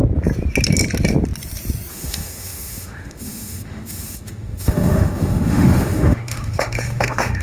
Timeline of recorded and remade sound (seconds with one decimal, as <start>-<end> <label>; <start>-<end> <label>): 0.0-1.9 recorded; 1.9-7.4 remade